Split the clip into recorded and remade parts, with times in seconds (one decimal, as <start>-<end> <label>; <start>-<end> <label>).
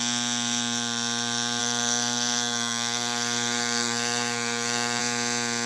0.0-1.6 recorded; 1.6-5.0 remade; 5.0-5.7 recorded